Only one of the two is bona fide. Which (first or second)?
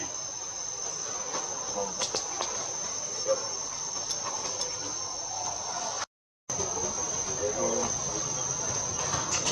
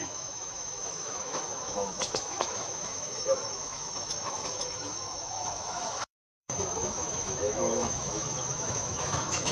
first